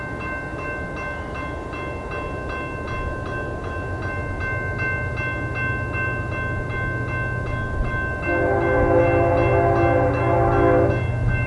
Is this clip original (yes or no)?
yes